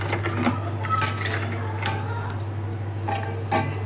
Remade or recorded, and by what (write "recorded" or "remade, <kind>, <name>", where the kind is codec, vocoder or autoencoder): recorded